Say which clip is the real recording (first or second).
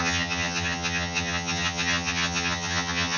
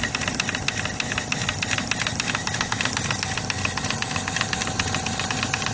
second